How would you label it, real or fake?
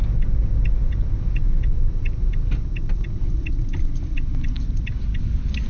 real